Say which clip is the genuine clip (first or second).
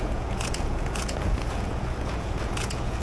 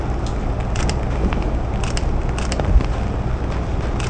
second